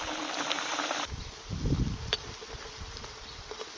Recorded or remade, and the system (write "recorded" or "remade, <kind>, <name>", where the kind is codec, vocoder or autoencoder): recorded